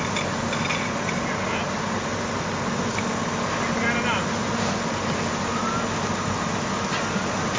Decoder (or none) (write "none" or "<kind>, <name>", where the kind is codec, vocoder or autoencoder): none